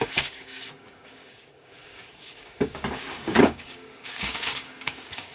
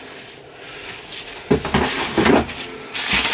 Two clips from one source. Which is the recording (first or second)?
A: second